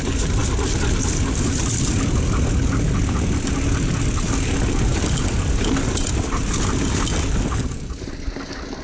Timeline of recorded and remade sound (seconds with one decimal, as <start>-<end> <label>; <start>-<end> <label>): 0.0-8.8 recorded